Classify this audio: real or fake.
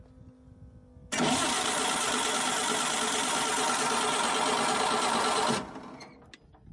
real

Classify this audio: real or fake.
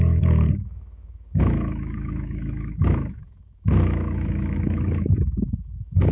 fake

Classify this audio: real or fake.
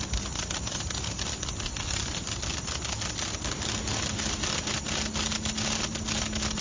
real